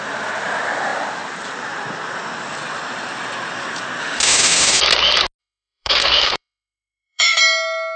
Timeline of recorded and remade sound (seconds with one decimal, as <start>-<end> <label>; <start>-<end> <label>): 0.0-4.0 recorded; 4.0-4.8 remade; 4.8-5.4 recorded; 5.4-7.4 remade; 7.4-8.0 recorded